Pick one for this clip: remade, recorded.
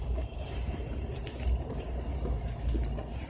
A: recorded